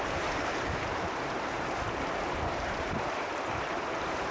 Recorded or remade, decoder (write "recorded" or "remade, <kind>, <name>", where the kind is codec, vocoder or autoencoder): remade, vocoder, BigVGAN v2